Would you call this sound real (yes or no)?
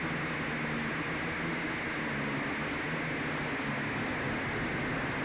yes